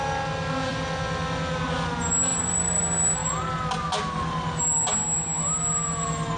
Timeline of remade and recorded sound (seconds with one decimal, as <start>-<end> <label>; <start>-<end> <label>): 0.0-6.4 recorded